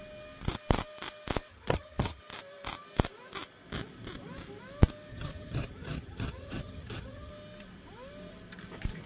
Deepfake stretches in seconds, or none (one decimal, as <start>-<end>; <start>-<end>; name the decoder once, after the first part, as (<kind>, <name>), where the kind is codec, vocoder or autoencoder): 1.5-2.2 (vocoder, HiFi-GAN); 5.1-7.3